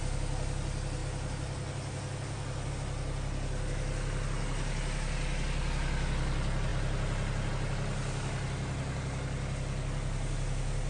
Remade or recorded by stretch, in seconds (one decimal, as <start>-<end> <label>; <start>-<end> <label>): 0.0-10.9 recorded